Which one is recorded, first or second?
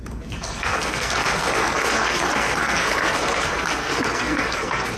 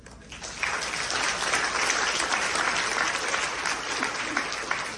second